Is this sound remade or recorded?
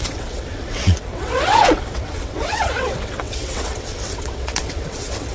remade